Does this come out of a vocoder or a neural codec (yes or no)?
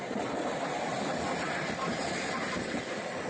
no